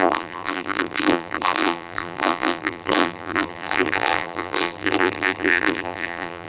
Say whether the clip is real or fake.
fake